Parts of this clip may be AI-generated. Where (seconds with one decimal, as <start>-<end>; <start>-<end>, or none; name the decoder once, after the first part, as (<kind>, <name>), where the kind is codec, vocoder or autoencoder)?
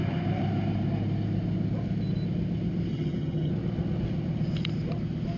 2.9-3.5 (vocoder, HiFi-GAN)